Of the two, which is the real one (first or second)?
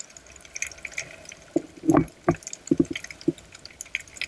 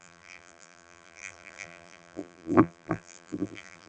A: first